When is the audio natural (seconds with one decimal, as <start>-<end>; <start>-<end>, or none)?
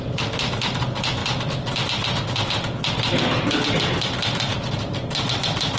0.0-5.8